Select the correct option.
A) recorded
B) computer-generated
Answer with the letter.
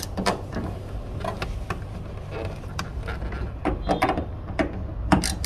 A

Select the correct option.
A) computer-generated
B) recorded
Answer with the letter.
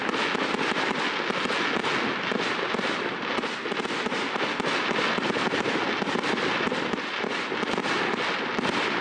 B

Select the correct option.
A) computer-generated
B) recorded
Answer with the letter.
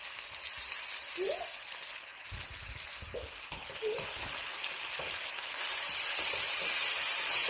B